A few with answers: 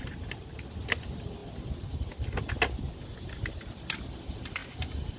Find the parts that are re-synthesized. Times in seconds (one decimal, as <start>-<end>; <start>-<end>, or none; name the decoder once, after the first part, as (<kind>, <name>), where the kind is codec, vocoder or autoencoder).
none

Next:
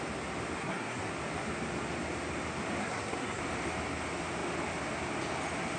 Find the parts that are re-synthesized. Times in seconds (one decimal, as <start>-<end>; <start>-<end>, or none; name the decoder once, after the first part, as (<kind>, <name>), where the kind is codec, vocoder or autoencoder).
0.6-1.1 (codec, SNAC); 2.8-3.4

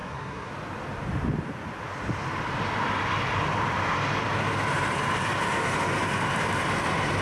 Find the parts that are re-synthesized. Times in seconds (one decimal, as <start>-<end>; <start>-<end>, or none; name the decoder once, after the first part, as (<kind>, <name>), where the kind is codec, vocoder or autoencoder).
0.0-0.5 (codec, SNAC)

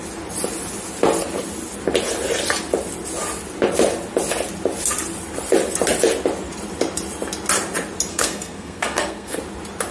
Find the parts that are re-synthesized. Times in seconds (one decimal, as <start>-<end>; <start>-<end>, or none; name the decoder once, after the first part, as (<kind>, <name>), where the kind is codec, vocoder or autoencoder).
8.1-9.4 (codec, SNAC)

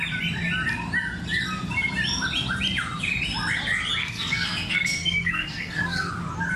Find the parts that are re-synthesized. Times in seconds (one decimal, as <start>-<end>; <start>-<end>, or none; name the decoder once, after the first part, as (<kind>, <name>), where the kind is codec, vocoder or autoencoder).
4.0-6.1 (codec, SNAC)

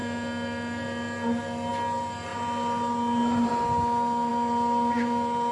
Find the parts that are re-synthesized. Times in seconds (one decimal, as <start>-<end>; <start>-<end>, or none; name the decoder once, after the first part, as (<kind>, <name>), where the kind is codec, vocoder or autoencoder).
none